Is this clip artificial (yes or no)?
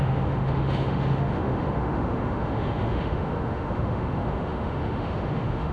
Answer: yes